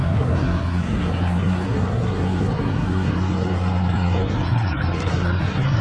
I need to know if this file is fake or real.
fake